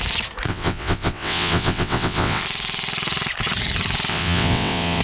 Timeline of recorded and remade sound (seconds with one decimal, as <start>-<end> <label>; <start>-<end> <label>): 0.0-0.5 recorded; 0.5-2.4 remade; 2.4-4.1 recorded; 4.1-5.0 remade